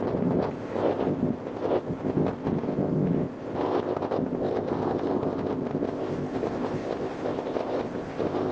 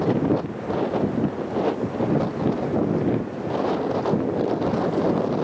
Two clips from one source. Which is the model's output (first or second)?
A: first